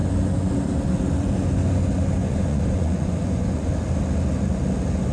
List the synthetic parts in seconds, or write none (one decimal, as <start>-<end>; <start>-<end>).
2.2-3.7